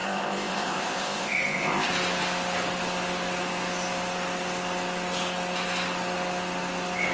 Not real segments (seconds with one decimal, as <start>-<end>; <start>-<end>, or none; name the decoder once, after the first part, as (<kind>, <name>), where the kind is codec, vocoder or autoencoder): 0.0-1.9 (codec, ZipCodec)